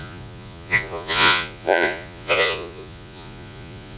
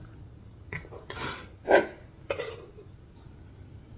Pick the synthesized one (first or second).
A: first